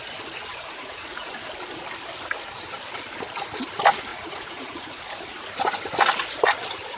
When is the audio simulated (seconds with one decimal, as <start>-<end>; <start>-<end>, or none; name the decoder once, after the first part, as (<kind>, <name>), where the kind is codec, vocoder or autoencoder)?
0.5-1.3 (vocoder, Vocos); 4.1-5.2